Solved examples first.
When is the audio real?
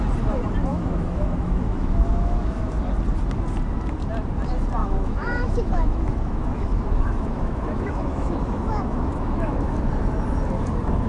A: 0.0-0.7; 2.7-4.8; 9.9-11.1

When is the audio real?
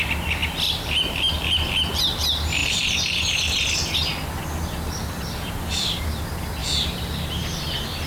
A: 0.0-0.4; 1.7-2.6; 6.0-8.1